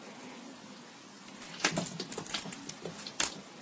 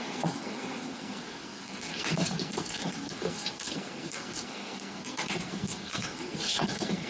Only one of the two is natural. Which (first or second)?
first